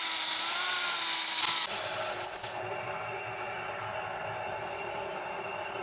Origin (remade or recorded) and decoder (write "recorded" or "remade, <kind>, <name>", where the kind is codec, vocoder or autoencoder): recorded